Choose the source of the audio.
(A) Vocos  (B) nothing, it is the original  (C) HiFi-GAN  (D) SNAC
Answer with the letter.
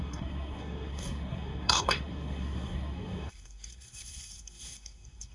D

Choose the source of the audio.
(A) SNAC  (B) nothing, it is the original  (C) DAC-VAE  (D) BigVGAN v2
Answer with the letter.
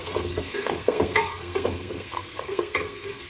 A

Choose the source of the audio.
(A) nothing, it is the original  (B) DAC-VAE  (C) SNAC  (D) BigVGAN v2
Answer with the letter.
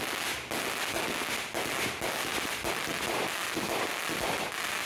A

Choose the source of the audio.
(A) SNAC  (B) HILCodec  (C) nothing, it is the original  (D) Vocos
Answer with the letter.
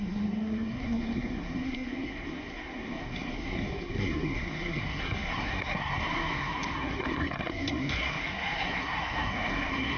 A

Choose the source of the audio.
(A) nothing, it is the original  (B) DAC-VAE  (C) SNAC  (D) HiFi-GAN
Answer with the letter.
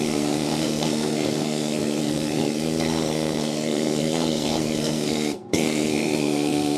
C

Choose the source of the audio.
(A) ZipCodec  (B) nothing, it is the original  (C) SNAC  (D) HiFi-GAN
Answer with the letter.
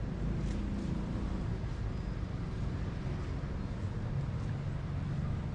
B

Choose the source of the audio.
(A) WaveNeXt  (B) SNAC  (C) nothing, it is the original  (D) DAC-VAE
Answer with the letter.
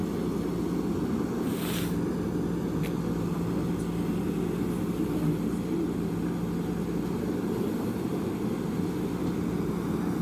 C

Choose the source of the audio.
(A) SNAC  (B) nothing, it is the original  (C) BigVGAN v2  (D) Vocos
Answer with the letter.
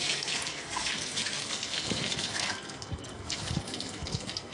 A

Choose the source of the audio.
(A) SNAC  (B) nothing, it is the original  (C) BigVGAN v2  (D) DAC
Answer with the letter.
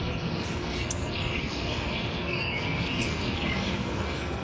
A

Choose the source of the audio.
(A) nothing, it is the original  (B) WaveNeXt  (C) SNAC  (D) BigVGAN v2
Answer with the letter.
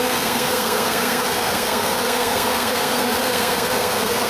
C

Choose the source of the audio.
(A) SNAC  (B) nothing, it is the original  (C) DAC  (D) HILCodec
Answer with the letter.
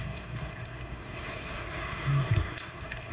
A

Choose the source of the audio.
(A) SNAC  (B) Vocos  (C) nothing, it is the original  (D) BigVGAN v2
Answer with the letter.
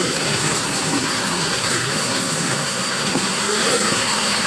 A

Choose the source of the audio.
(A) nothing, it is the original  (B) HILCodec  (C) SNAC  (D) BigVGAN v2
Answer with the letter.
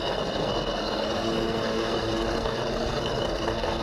C